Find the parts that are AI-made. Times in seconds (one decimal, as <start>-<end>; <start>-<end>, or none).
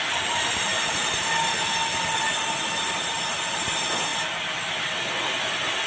none